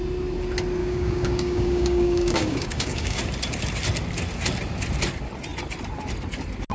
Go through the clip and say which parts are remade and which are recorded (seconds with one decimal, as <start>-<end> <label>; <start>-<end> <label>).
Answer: 0.0-0.8 recorded; 0.8-3.2 remade; 3.2-6.7 recorded